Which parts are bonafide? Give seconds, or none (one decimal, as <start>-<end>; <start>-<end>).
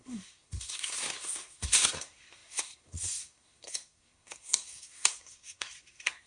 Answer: none